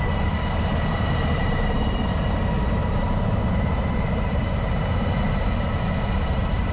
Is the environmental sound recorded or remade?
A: remade